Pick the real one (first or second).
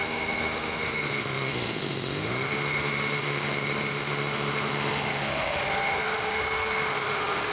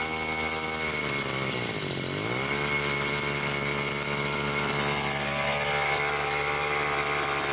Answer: second